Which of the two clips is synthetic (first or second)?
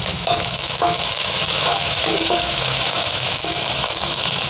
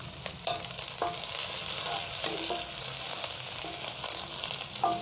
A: first